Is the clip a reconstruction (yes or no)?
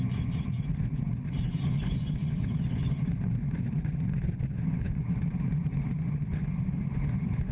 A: yes